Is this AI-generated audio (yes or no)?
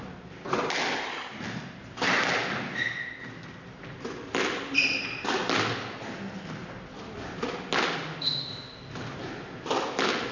no